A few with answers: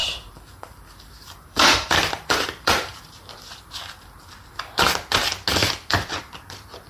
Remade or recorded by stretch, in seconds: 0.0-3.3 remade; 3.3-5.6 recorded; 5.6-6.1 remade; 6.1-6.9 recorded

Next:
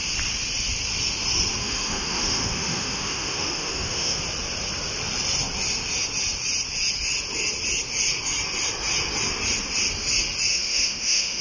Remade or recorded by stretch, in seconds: 0.0-1.6 recorded; 1.6-4.2 remade; 4.2-10.5 recorded; 10.5-11.4 remade

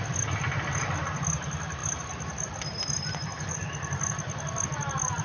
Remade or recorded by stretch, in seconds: 0.0-5.2 recorded

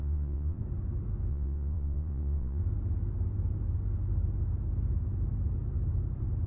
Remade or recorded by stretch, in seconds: 0.0-0.6 remade; 0.6-1.3 recorded; 1.3-2.6 remade; 2.6-6.5 recorded

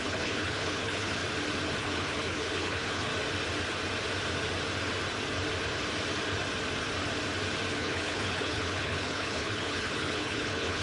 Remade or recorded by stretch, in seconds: 0.0-1.2 remade; 1.2-1.8 recorded; 1.8-3.1 remade; 3.1-7.7 recorded; 7.7-10.8 remade

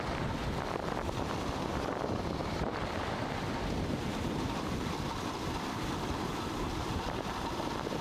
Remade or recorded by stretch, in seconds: 0.0-8.0 remade

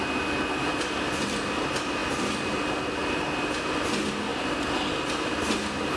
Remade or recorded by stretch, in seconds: 0.0-6.0 recorded

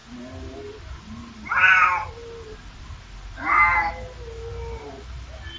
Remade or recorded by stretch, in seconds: 0.0-5.6 recorded